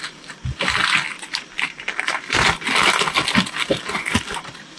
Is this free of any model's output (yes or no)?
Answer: no